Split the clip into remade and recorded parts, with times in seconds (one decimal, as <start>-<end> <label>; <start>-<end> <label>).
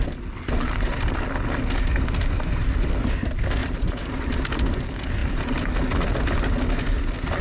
0.0-3.6 recorded; 3.6-4.4 remade; 4.4-7.4 recorded